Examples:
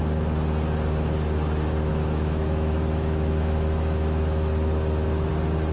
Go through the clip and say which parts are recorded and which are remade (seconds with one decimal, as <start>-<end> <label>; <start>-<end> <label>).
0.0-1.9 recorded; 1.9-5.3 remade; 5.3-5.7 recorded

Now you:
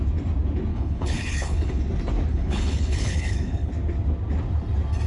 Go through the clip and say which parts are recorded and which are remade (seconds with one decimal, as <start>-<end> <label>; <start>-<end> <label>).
0.0-0.7 recorded; 0.7-1.8 remade; 1.8-2.3 recorded; 2.3-3.7 remade; 3.7-5.1 recorded

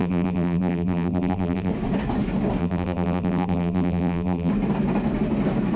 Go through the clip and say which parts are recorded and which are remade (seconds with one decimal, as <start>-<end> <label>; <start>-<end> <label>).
0.0-1.7 remade; 1.7-2.6 recorded; 2.6-4.5 remade; 4.5-5.8 recorded